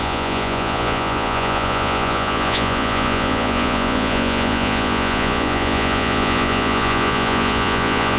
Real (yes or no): no